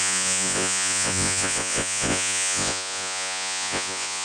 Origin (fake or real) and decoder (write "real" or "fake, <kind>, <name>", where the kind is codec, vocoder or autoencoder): fake, vocoder, Vocos